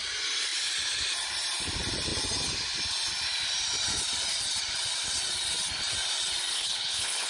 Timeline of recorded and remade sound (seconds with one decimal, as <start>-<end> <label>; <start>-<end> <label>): 0.0-6.5 recorded; 6.5-7.3 remade